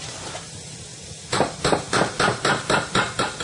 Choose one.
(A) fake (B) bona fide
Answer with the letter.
B